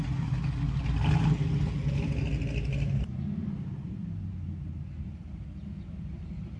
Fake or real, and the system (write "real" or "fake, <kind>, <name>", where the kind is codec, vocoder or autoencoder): real